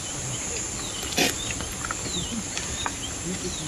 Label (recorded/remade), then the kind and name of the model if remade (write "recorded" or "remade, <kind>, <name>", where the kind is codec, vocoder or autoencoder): recorded